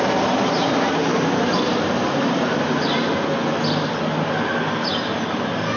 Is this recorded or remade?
recorded